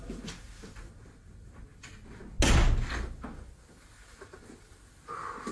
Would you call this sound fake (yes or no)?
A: no